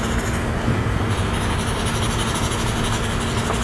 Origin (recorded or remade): recorded